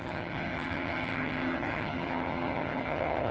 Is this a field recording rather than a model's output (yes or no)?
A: no